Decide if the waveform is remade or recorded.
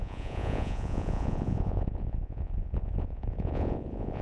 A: remade